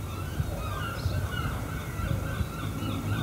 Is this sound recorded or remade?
remade